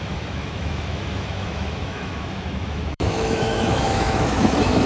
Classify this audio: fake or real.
fake